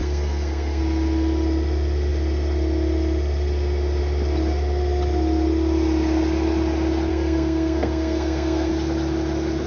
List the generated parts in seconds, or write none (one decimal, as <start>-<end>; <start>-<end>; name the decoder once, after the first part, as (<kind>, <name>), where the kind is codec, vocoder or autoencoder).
0.0-0.8 (codec, SNAC); 7.1-8.7